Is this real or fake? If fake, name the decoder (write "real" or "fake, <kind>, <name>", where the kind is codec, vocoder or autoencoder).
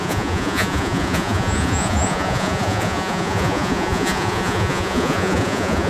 fake, vocoder, Vocos